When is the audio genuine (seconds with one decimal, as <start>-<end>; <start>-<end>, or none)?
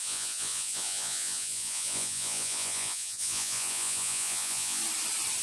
4.8-5.4